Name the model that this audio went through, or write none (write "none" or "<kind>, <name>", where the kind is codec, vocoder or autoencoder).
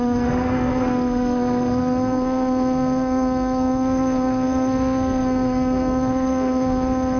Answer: codec, SNAC